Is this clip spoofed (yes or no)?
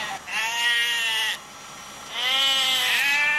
no